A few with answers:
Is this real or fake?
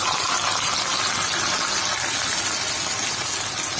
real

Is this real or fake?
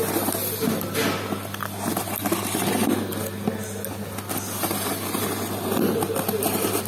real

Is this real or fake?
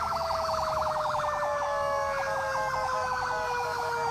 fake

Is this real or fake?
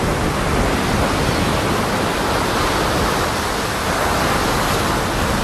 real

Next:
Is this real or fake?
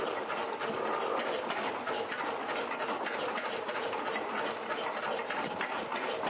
fake